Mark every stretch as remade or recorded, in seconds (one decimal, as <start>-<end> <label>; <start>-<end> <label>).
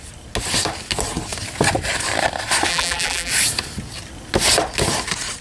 0.0-2.7 recorded; 2.7-3.3 remade; 3.3-5.4 recorded